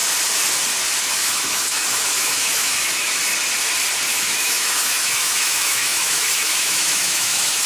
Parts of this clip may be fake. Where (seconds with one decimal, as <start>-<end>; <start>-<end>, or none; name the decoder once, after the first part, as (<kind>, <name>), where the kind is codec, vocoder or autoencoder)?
1.0-3.2 (autoencoder, DAC-VAE); 4.1-7.7

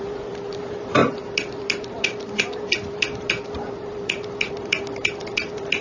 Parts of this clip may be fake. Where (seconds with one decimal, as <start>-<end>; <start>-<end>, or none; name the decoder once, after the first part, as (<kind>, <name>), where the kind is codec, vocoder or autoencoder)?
0.0-5.8 (vocoder, BigVGAN v2)